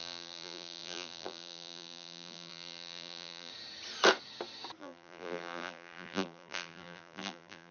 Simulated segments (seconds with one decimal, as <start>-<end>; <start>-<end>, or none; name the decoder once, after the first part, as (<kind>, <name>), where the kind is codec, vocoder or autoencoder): 0.0-3.5 (vocoder, BigVGAN v2); 4.8-7.7